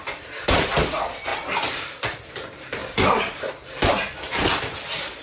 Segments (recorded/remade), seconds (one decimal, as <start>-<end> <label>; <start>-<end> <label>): 0.0-1.3 recorded; 1.3-2.3 remade; 2.3-5.2 recorded